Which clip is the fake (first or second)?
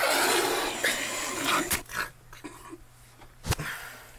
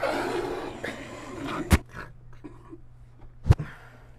first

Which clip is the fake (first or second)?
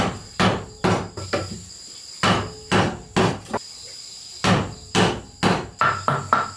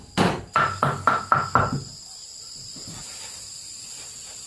second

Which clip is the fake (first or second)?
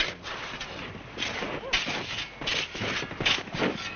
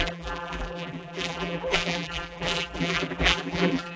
second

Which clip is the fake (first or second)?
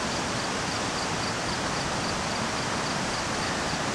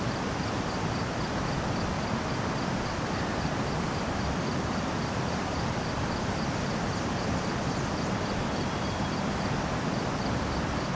second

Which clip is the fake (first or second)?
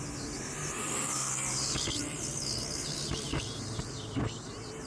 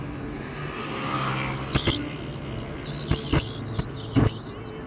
first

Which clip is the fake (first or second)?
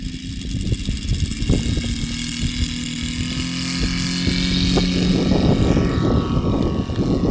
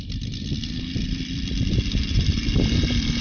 second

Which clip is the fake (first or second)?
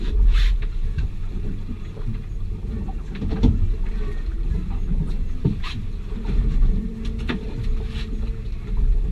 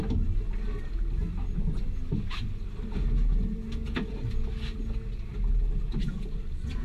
first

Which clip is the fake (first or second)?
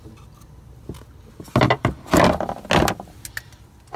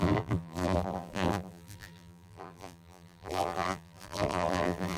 second